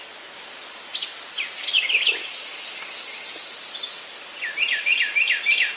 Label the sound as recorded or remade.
remade